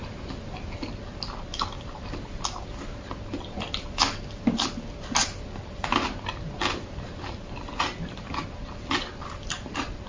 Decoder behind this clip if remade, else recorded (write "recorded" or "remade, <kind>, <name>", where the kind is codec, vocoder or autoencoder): recorded